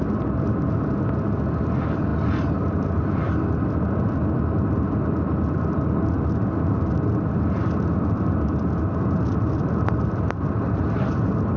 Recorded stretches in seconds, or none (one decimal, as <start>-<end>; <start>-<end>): 0.0-11.6